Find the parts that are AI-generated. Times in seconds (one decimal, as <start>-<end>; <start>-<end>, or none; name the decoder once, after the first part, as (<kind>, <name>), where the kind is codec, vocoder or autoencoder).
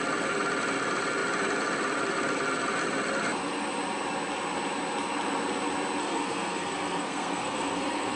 6.0-8.2 (codec, SNAC)